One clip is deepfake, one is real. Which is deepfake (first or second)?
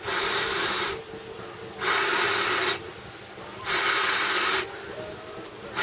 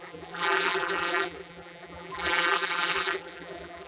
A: second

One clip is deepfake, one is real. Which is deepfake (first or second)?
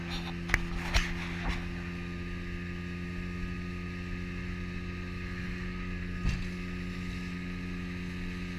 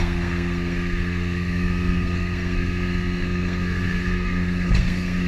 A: second